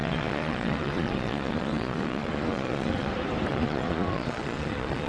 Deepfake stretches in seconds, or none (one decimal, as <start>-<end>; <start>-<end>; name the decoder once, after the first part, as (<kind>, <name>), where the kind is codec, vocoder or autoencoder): 0.0-3.1 (vocoder, Vocos); 3.5-5.1